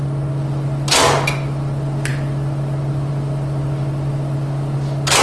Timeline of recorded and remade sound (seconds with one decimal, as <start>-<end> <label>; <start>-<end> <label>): 0.0-5.2 recorded